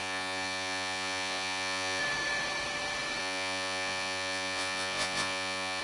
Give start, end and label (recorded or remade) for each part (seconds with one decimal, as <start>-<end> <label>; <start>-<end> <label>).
0.0-2.0 remade; 2.0-3.2 recorded; 3.2-5.8 remade